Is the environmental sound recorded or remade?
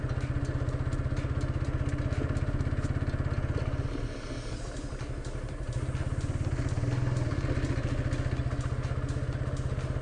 recorded